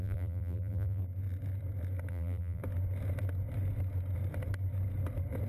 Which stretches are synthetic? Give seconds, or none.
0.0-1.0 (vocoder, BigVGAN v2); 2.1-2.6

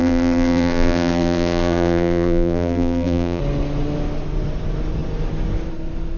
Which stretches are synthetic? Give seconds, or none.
0.0-3.4 (vocoder, BigVGAN v2)